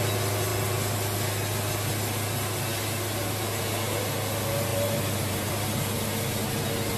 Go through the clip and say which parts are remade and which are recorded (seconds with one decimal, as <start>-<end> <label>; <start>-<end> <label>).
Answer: 0.0-4.7 recorded; 4.7-5.5 remade; 5.5-7.0 recorded

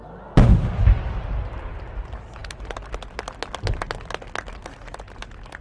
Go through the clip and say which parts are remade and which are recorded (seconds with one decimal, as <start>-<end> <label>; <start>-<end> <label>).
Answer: 0.0-5.6 recorded

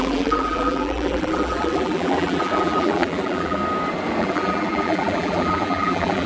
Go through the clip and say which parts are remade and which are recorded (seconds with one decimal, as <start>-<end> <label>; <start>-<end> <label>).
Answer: 0.0-3.6 remade; 3.6-4.2 recorded; 4.2-6.3 remade

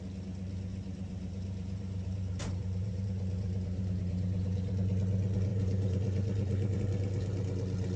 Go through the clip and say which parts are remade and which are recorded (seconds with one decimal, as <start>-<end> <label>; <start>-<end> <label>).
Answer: 0.0-0.7 recorded; 0.7-4.7 remade; 4.7-5.5 recorded; 5.5-6.8 remade; 6.8-8.0 recorded

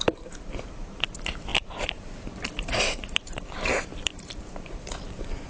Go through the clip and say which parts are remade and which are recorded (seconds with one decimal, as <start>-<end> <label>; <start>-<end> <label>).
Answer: 0.0-5.5 remade

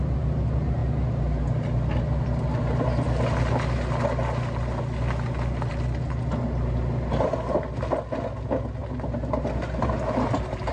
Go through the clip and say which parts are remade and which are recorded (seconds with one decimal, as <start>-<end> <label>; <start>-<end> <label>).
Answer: 0.0-10.7 recorded